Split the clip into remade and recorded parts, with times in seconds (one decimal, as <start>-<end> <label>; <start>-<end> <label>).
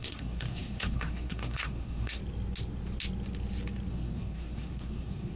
0.0-2.2 remade; 2.2-3.9 recorded; 3.9-5.4 remade